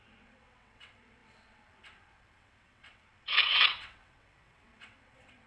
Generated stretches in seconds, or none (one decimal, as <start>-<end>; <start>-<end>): 0.0-5.5